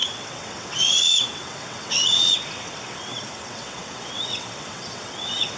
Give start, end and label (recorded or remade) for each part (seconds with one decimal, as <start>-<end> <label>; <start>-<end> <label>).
0.0-5.6 remade